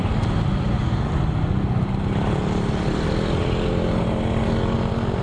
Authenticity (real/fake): real